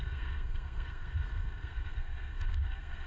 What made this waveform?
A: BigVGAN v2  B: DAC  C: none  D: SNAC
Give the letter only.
D